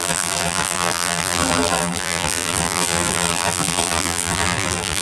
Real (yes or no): no